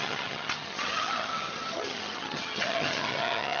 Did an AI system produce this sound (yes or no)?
yes